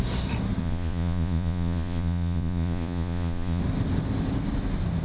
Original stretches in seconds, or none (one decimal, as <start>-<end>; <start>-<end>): 0.0-0.6; 3.6-5.0